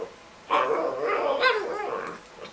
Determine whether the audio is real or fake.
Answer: real